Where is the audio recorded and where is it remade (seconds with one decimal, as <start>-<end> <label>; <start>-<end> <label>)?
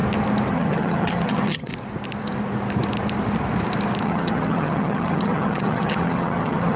0.0-0.5 recorded; 0.5-1.7 remade; 1.7-4.0 recorded; 4.0-6.8 remade